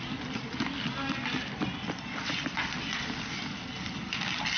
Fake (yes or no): no